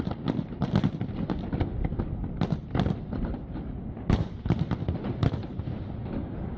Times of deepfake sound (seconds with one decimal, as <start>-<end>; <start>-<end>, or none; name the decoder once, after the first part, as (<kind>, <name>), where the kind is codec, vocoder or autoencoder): 1.9-3.5 (vocoder, BigVGAN v2)